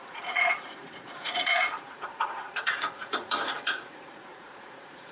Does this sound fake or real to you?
fake